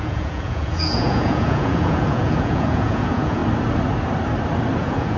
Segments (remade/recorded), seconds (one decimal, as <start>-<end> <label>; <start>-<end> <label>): 0.0-3.4 remade; 3.4-4.8 recorded; 4.8-5.2 remade